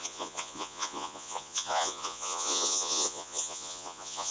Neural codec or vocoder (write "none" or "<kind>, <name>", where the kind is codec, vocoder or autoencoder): vocoder, Vocos